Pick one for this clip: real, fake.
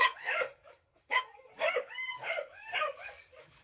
fake